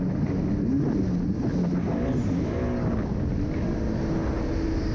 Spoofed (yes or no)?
no